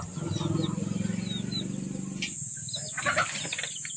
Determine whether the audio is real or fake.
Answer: real